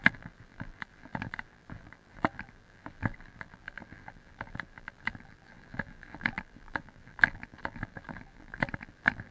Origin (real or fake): fake